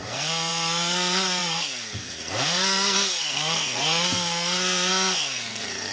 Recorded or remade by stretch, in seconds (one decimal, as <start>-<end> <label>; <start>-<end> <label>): 0.0-5.9 remade